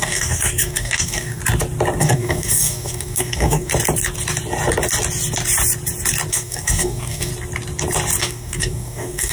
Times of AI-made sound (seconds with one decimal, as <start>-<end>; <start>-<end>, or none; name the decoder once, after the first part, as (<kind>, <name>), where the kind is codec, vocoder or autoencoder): 0.0-1.4 (codec, DAC); 2.0-3.7; 6.3-7.3; 8.2-9.3